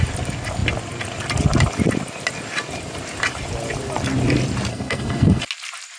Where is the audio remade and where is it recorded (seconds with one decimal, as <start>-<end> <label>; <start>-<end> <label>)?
0.0-4.7 recorded; 4.7-5.4 remade; 5.4-6.0 recorded